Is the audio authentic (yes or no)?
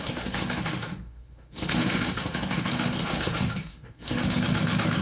no